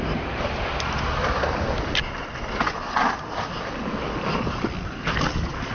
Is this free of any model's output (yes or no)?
yes